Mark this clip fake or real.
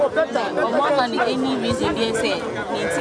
real